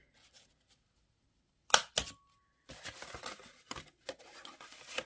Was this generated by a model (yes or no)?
no